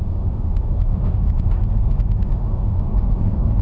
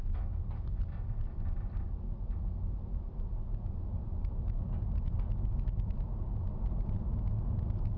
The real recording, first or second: second